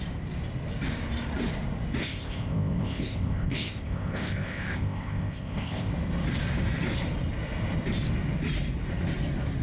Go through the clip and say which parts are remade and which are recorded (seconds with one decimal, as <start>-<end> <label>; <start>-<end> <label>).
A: 0.0-2.0 recorded; 2.0-5.9 remade; 5.9-9.6 recorded